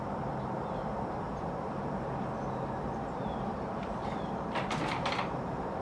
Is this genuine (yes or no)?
no